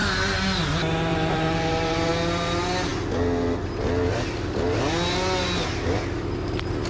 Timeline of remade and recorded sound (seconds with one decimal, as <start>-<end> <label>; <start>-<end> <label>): 0.0-1.1 recorded; 1.1-2.1 remade; 2.1-6.9 recorded